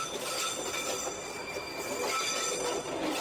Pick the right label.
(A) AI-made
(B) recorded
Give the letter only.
B